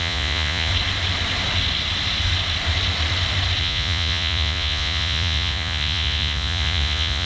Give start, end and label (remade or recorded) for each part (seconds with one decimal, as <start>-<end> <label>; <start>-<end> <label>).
0.0-0.7 remade; 0.7-3.6 recorded; 3.6-7.2 remade